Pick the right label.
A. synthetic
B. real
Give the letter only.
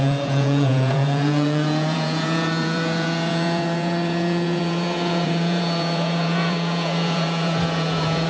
A